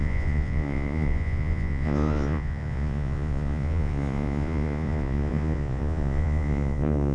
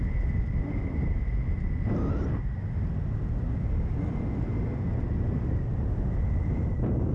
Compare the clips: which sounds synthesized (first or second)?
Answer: first